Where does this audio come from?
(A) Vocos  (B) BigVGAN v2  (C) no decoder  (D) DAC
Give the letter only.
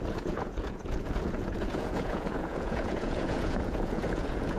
A